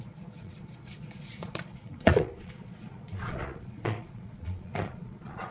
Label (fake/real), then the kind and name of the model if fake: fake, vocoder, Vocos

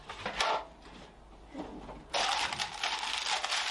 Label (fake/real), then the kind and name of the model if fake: real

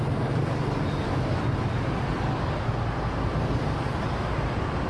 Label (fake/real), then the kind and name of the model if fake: real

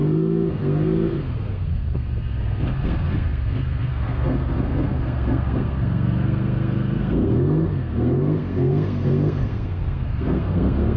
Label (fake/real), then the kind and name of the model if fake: fake, codec, SNAC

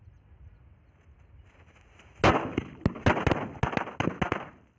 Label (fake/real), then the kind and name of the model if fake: real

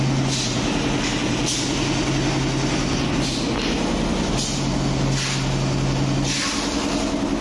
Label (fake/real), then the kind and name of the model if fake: real